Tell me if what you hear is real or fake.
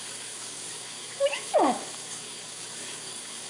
fake